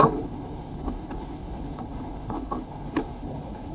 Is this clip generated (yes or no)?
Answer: yes